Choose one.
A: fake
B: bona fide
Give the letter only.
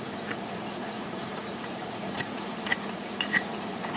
A